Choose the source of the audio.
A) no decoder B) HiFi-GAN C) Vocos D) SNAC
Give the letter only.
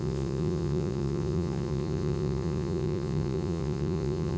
C